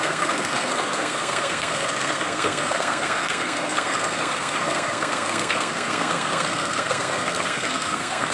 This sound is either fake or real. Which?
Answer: fake